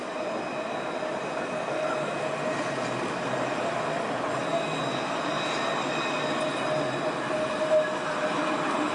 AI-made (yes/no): no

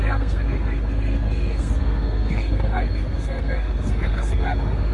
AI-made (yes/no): yes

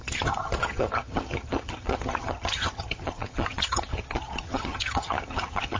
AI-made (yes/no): yes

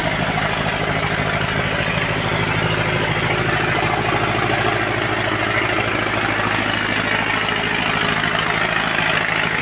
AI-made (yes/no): no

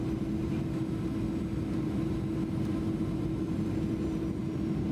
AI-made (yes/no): no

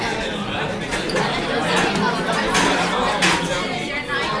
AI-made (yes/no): no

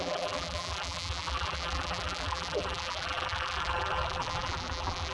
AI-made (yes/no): yes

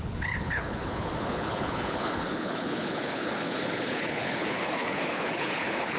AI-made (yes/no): yes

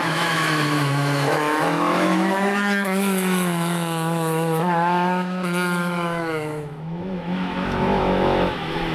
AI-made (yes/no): yes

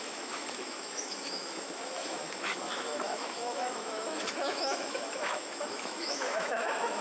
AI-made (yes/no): yes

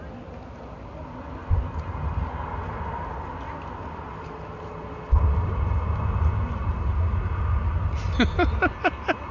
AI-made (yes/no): no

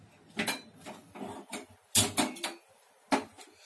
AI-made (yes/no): no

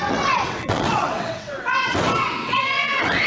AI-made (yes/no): yes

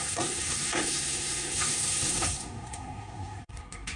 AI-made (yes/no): yes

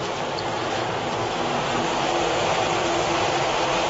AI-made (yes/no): no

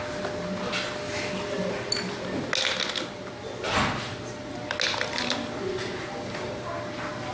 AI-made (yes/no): no